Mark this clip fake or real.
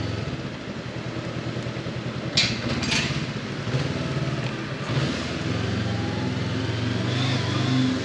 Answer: real